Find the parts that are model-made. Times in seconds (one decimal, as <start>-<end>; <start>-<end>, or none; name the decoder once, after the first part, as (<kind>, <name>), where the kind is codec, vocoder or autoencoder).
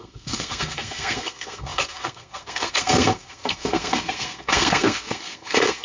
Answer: 0.0-5.8 (codec, SNAC)